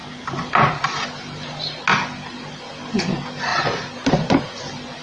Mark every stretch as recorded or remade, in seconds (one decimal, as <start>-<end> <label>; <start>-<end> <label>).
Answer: 0.0-5.0 recorded